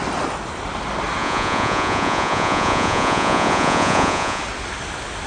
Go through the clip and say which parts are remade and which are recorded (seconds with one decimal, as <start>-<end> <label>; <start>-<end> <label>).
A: 0.0-1.2 recorded; 1.2-4.4 remade; 4.4-5.3 recorded